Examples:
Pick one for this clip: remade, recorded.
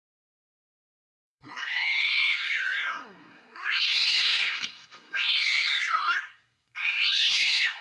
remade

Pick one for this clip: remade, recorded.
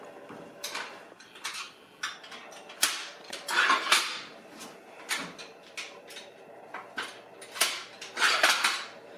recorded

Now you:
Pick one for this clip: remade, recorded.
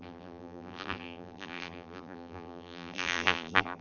remade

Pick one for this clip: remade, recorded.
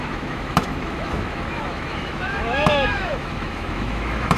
remade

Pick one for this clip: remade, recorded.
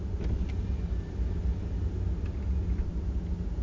recorded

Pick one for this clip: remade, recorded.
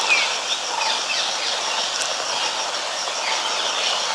recorded